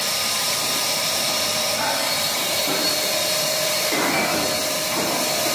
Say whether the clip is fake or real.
fake